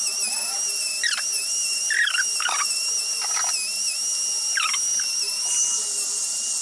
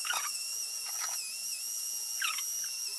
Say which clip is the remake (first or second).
second